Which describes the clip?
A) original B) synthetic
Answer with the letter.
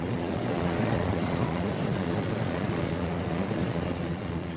B